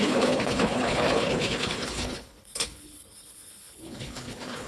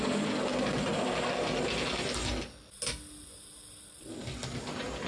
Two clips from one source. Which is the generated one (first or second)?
first